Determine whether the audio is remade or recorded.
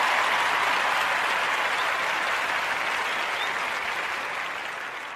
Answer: recorded